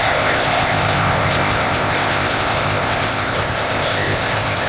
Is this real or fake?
fake